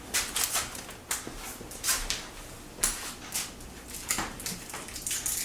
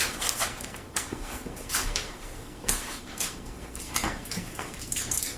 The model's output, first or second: second